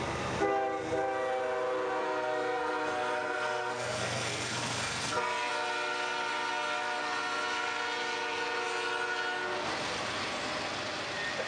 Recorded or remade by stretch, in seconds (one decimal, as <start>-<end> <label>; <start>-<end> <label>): 0.0-2.0 recorded; 2.0-5.5 remade; 5.5-11.5 recorded